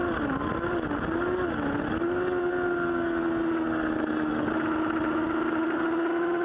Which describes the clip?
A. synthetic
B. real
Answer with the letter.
B